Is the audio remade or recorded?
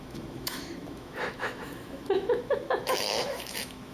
remade